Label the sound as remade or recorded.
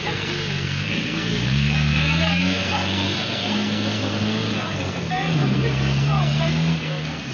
remade